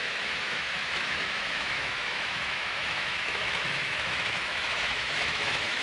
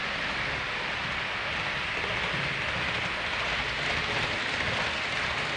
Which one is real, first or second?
second